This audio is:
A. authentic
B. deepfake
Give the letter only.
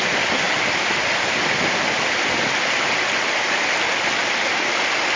A